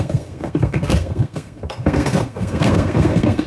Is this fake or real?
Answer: fake